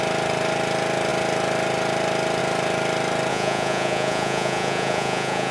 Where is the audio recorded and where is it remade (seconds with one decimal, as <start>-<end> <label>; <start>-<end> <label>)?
0.0-3.3 recorded; 3.3-5.5 remade